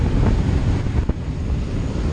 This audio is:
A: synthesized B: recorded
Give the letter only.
B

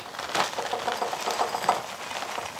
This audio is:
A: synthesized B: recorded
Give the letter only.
B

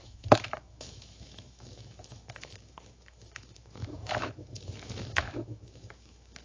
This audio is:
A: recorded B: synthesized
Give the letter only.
B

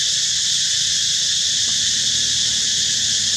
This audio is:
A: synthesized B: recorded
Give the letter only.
B